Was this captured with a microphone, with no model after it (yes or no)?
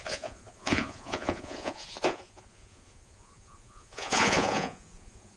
no